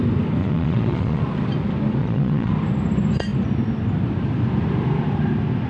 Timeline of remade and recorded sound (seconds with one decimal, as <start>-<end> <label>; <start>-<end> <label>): 0.0-0.4 recorded; 0.4-1.2 remade; 1.2-2.0 recorded; 2.0-2.5 remade; 2.5-5.7 recorded